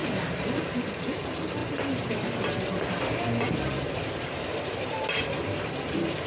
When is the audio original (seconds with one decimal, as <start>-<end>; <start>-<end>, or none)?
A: none